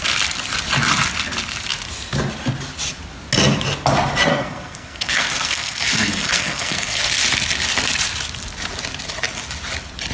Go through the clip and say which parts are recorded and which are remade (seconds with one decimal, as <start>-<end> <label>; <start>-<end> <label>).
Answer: 0.0-4.3 recorded; 4.3-7.1 remade; 7.1-10.1 recorded